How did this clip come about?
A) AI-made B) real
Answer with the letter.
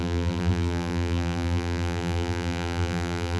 A